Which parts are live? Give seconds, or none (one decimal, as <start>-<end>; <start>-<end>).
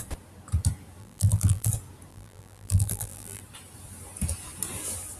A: 0.0-1.0; 1.7-2.1; 3.4-5.2